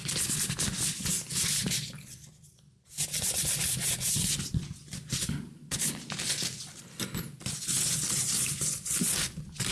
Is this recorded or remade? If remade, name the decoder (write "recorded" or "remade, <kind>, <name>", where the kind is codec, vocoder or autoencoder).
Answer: recorded